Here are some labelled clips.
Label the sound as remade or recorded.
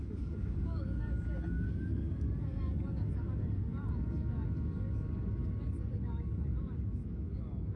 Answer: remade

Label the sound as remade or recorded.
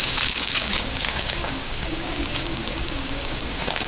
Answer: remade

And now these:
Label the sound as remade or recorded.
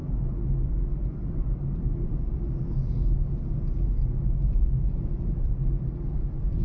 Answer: recorded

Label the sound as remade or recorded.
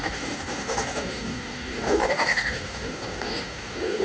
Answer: remade